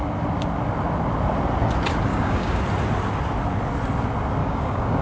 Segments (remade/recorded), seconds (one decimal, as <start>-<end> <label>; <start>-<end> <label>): 0.0-2.1 recorded; 2.1-2.6 remade; 2.6-4.4 recorded; 4.4-5.0 remade

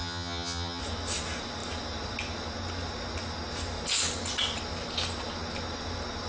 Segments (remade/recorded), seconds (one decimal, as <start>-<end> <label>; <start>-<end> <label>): 0.0-0.8 remade; 0.8-6.3 recorded